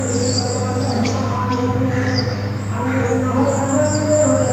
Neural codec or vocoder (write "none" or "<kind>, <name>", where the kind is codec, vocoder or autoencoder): codec, DAC